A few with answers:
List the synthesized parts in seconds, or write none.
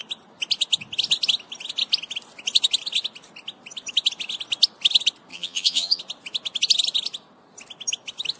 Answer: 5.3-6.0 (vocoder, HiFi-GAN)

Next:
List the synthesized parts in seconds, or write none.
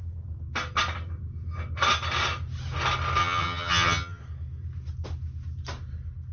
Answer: 3.2-4.2 (vocoder, HiFi-GAN)